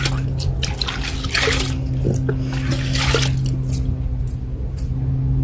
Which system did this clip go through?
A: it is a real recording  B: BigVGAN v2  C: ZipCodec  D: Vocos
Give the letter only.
A